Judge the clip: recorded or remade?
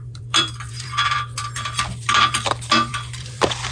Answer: remade